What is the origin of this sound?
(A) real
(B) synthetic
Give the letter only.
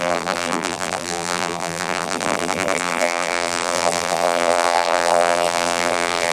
B